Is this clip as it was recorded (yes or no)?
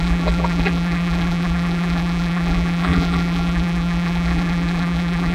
no